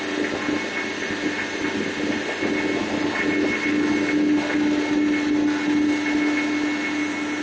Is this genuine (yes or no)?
yes